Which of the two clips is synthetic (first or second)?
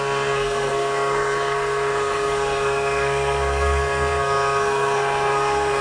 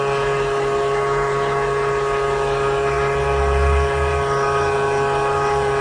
first